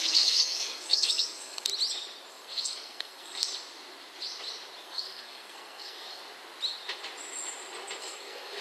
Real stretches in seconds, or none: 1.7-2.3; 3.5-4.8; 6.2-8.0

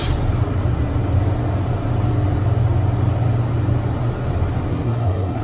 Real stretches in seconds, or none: 0.0-4.7

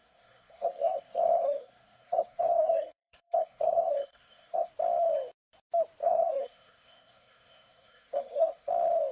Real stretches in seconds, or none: 4.7-6.0; 8.7-9.1

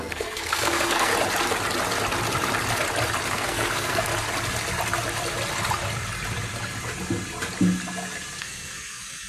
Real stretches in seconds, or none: 1.1-3.3; 4.1-8.4

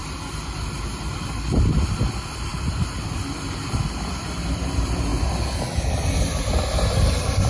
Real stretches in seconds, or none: 0.0-7.5

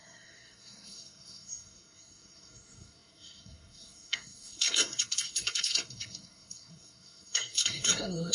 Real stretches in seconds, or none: none